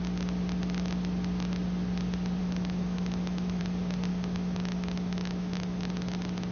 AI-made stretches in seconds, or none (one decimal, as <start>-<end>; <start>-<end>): 2.4-3.6; 4.1-5.9